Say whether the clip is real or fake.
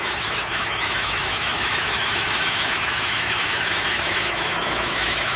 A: fake